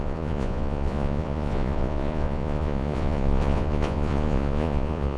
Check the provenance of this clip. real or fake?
fake